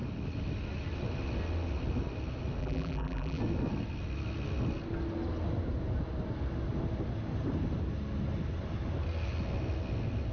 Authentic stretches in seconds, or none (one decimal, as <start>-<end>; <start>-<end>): 0.0-2.6; 3.4-10.3